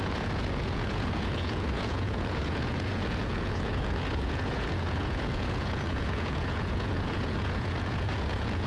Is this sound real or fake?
fake